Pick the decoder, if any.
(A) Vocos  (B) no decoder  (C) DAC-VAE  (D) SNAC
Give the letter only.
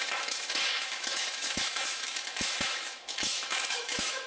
C